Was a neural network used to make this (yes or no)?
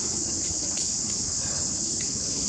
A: yes